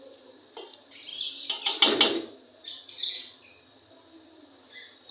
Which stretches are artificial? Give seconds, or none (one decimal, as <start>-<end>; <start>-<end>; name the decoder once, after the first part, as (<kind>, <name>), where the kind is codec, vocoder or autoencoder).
none